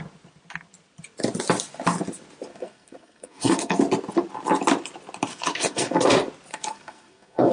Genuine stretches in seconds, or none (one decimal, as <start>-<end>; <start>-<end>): 0.0-2.5; 3.8-5.3; 6.0-6.5